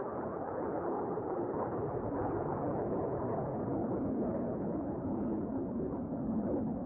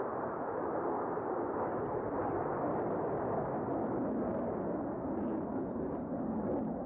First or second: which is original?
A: second